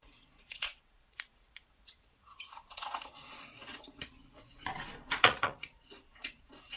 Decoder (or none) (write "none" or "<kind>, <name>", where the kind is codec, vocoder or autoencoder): vocoder, Vocos